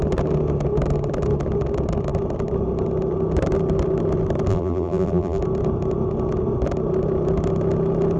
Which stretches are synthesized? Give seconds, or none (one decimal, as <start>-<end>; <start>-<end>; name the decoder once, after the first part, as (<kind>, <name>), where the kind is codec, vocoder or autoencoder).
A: 4.5-5.4 (vocoder, BigVGAN v2)